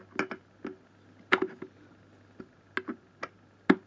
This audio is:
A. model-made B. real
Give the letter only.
B